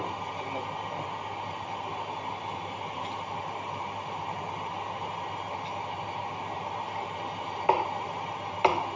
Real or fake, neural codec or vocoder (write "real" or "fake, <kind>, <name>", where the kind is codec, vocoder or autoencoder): real